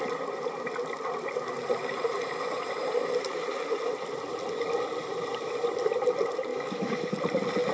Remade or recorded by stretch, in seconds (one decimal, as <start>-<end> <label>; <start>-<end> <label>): 0.0-6.5 recorded; 6.5-7.1 remade; 7.1-7.7 recorded